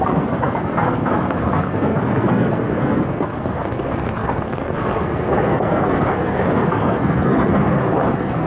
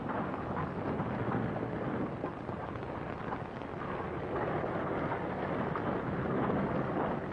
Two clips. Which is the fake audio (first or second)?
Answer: first